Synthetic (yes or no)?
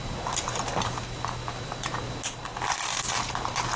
no